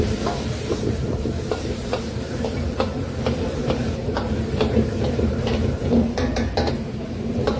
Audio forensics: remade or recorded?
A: remade